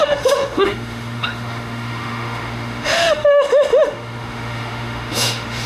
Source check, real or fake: fake